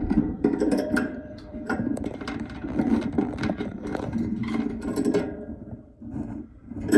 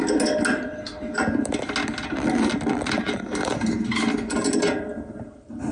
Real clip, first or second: second